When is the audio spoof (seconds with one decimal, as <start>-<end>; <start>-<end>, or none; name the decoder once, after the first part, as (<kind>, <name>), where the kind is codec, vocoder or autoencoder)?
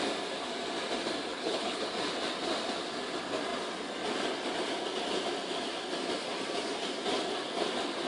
1.3-1.8 (codec, HILCodec)